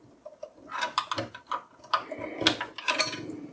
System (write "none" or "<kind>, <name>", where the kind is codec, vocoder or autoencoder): none